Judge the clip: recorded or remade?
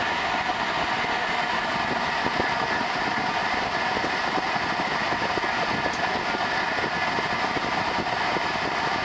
recorded